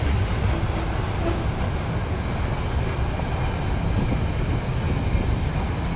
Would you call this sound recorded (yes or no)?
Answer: yes